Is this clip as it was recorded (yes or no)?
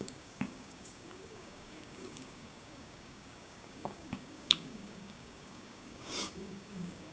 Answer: no